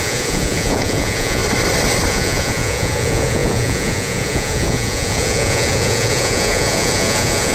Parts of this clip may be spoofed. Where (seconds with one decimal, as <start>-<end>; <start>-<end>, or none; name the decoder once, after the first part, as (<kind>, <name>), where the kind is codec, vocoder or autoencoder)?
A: 0.0-1.4 (vocoder, Vocos); 2.1-7.5